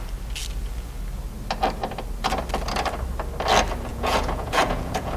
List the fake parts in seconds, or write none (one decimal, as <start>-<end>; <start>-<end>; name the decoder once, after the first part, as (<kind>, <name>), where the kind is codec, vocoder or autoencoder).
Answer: 3.9-5.2 (vocoder, Vocos)